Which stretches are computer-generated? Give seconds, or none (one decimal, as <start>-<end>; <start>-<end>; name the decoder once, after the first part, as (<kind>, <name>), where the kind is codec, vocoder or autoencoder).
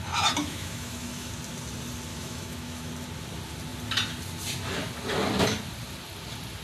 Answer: 0.4-1.3 (autoencoder, DAC-VAE); 2.1-2.9